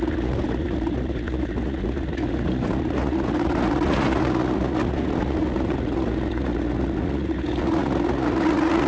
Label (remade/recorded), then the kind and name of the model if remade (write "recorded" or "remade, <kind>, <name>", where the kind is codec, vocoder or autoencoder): remade, vocoder, Vocos